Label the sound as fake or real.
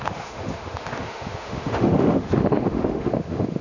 fake